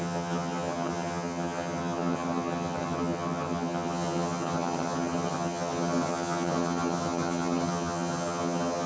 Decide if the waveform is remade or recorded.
remade